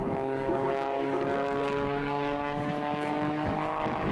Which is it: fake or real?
fake